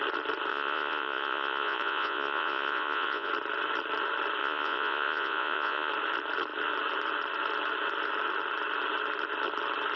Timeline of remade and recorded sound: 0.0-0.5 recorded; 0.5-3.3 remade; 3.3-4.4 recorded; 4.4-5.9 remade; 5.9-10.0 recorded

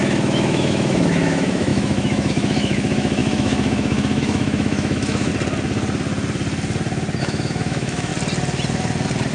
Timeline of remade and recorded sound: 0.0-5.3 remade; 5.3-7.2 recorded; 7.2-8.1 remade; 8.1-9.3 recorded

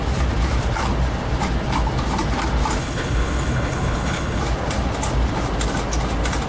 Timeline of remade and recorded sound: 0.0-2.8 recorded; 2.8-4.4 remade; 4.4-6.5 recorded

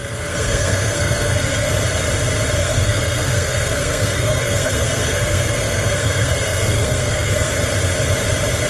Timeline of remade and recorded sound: 0.0-1.7 remade; 1.7-2.6 recorded; 2.6-7.5 remade; 7.5-8.7 recorded